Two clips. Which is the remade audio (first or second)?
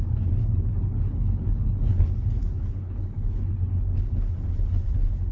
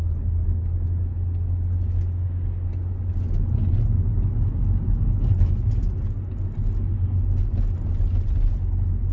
first